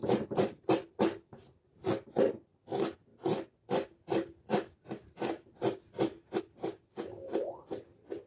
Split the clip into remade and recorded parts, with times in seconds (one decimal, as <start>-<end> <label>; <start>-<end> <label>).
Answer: 0.0-8.3 recorded